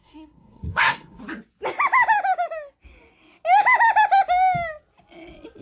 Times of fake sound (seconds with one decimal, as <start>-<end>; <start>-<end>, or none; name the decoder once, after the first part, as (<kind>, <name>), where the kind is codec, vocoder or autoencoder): 0.0-1.2 (codec, SNAC)